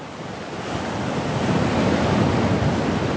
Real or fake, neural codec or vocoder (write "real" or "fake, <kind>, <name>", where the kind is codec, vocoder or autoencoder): real